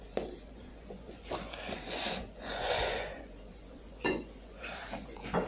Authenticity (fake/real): fake